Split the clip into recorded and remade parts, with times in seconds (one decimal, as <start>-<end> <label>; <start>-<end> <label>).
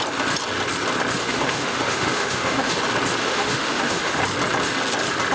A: 0.0-1.2 recorded; 1.2-2.8 remade; 2.8-3.2 recorded; 3.2-4.2 remade; 4.2-5.3 recorded